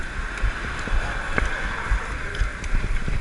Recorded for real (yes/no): yes